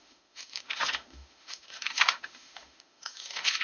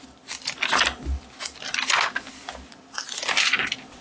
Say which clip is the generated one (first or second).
first